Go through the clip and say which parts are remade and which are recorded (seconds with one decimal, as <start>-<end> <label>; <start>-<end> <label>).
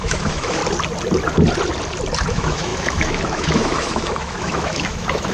0.0-0.6 remade; 0.6-2.3 recorded; 2.3-5.3 remade